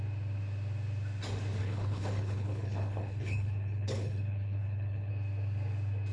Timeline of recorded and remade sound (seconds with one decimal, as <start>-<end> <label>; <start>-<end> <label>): 0.0-1.6 recorded; 1.6-5.1 remade; 5.1-6.1 recorded